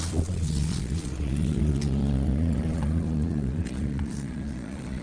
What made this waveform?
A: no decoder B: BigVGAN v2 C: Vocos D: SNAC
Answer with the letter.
C